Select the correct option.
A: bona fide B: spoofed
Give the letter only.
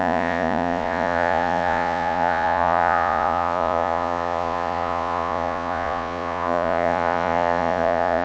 B